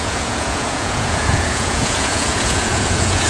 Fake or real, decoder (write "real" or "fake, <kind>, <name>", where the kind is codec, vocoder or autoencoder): fake, vocoder, Vocos